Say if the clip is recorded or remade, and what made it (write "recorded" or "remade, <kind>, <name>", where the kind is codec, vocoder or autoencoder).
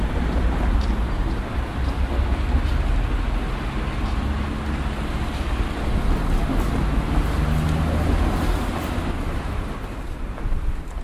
recorded